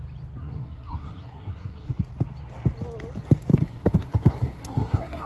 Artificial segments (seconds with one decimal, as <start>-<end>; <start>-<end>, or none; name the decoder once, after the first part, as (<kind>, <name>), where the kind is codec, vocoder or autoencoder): 0.4-2.0 (codec, SNAC); 3.5-5.3